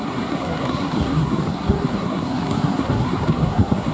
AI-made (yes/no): yes